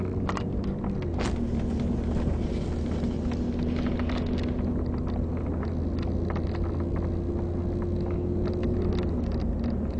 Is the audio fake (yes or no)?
no